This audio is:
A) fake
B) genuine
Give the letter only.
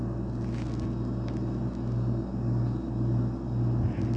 B